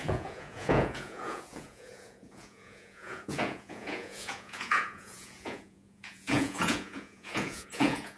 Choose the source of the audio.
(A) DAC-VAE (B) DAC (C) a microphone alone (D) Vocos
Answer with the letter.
D